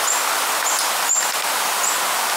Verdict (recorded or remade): recorded